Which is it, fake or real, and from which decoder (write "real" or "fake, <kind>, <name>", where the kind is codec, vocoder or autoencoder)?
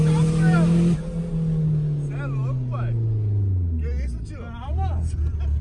real